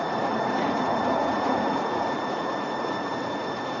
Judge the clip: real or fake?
fake